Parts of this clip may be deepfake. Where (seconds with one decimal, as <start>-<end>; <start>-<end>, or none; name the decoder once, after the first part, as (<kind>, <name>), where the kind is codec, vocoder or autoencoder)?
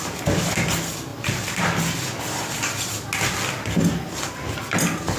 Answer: none